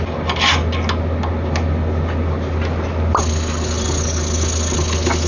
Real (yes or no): yes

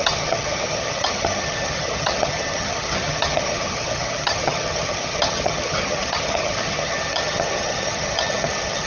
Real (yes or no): no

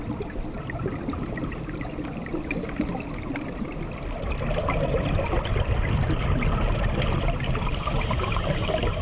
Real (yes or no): yes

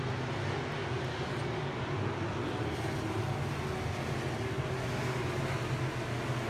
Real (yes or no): yes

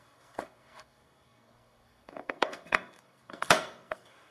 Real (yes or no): no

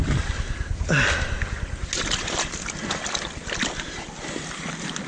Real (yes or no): yes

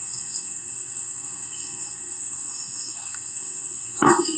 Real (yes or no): no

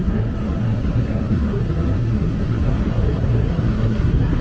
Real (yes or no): no